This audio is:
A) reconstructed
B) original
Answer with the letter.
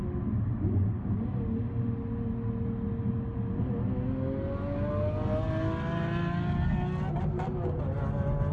B